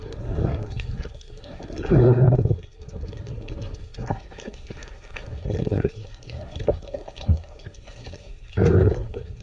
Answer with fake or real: fake